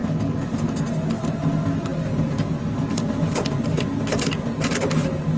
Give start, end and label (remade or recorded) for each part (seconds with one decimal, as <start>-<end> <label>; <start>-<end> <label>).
0.0-5.4 recorded